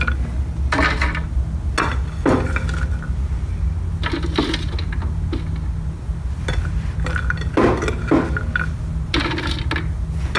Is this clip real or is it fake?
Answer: real